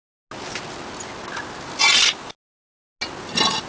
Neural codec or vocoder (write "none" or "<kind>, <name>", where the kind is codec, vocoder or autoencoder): none